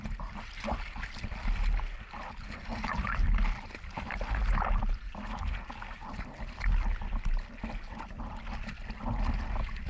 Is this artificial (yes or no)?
no